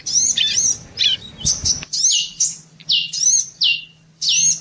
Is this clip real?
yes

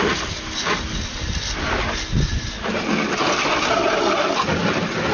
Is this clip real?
yes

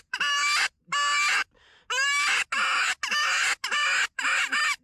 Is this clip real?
yes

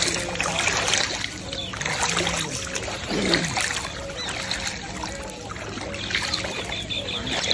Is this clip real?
yes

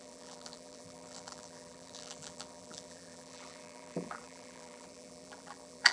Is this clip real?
no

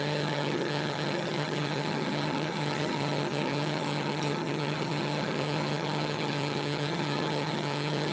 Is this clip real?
no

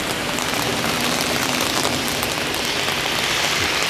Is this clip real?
no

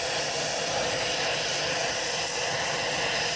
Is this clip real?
yes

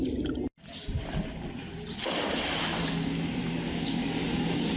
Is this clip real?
yes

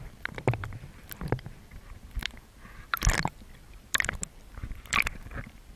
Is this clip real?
no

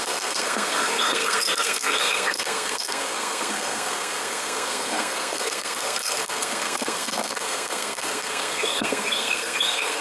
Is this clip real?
no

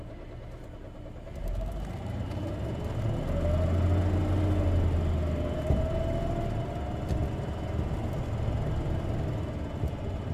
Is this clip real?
yes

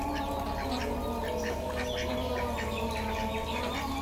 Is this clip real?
yes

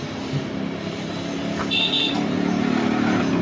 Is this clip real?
yes